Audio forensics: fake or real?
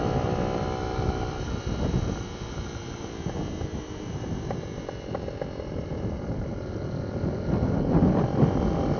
real